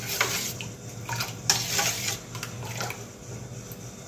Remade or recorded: recorded